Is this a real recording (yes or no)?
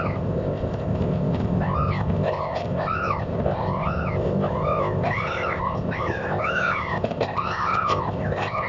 no